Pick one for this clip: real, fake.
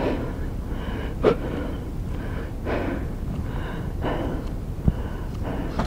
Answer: real